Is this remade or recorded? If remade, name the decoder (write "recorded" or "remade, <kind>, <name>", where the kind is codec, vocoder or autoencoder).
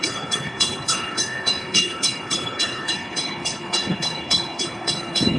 remade, codec, HILCodec